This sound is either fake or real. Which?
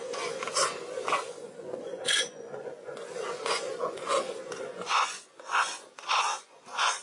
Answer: fake